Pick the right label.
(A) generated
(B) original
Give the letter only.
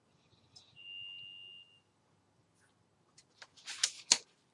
B